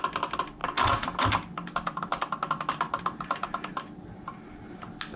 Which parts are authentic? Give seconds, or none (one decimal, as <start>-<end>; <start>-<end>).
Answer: 0.0-5.2